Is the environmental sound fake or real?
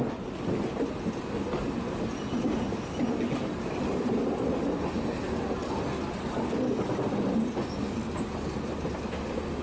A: real